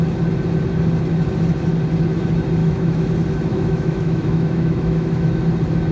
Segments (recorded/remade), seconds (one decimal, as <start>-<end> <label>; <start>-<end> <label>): 0.0-2.6 recorded; 2.6-3.1 remade; 3.1-3.5 recorded; 3.5-5.4 remade; 5.4-5.9 recorded